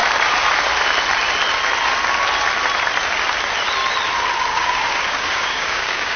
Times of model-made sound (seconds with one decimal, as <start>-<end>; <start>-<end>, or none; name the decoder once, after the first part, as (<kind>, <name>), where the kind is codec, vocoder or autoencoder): 4.5-6.2 (codec, DAC)